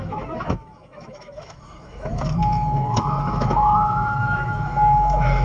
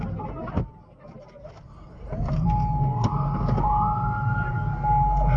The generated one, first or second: first